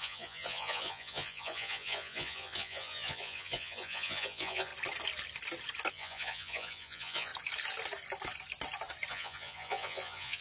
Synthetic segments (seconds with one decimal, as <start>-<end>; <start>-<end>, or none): 0.0-4.7; 5.9-7.3; 9.1-10.4